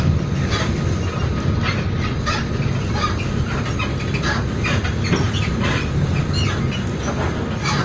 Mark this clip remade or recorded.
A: recorded